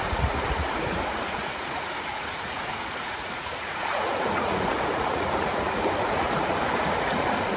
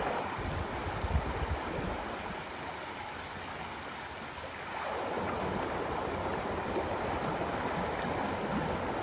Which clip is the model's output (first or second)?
first